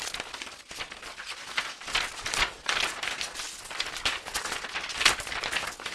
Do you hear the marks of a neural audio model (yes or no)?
no